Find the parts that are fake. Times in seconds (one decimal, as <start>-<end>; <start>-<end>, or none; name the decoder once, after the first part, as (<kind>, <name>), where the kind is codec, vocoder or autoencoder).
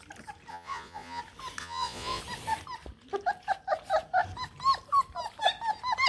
0.5-1.2 (vocoder, Vocos); 1.6-2.2